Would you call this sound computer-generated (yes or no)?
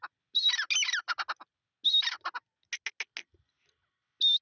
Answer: no